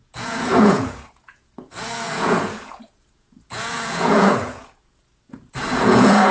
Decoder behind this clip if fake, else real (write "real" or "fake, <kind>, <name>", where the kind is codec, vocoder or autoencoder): fake, vocoder, Vocos